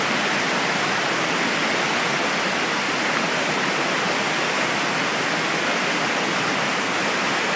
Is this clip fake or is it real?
real